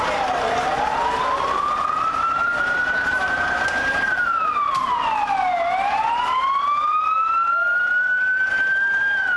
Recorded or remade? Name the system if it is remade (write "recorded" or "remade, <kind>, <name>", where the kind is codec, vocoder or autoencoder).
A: remade, vocoder, BigVGAN v2